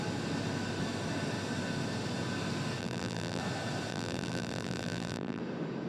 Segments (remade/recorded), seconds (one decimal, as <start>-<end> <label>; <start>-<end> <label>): 0.0-2.8 recorded; 2.8-3.4 remade; 3.4-3.9 recorded; 3.9-5.4 remade; 5.4-5.9 recorded